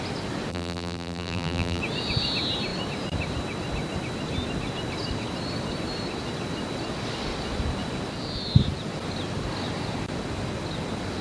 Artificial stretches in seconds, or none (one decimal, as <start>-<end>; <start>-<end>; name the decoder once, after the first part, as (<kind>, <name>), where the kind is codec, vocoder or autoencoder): 0.5-1.8 (vocoder, BigVGAN v2)